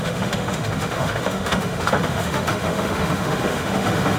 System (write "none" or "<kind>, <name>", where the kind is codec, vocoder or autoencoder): autoencoder, DAC-VAE